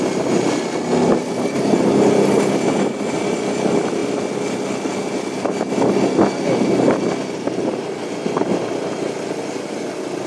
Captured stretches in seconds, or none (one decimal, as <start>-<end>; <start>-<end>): 0.0-10.3